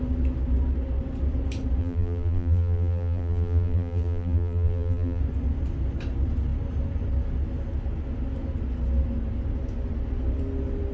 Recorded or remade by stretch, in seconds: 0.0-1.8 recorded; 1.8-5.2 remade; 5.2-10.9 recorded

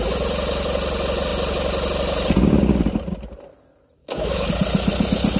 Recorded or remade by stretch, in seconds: 0.0-4.0 recorded; 4.0-4.5 remade; 4.5-5.4 recorded

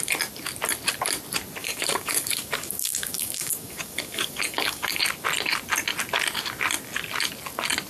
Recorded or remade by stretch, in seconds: 0.0-1.6 recorded; 1.6-5.0 remade; 5.0-7.9 recorded

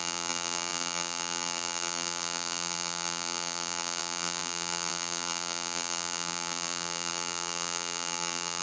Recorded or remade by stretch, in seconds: 0.0-8.6 remade

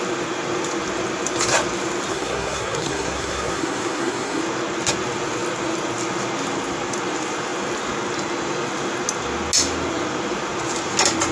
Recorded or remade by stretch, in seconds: 0.0-2.1 recorded; 2.1-4.4 remade; 4.4-11.3 recorded